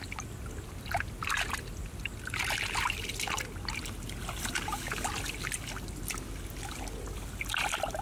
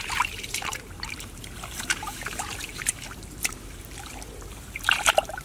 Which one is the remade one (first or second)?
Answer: second